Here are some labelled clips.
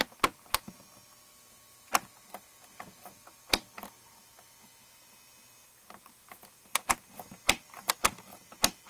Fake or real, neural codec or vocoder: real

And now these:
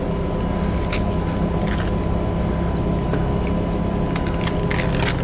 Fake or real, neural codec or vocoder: real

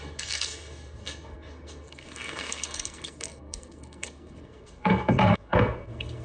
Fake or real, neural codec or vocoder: fake, codec, SNAC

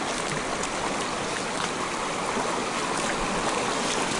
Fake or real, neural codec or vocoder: real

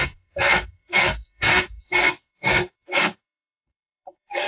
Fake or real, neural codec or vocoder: fake, codec, SNAC